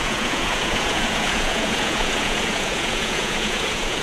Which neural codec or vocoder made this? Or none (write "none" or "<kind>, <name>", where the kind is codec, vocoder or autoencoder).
vocoder, Vocos